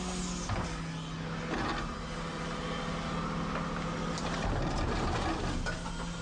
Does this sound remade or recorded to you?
recorded